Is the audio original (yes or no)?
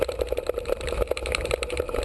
no